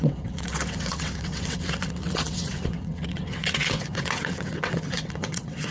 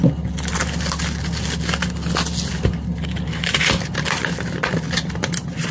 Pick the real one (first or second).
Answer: second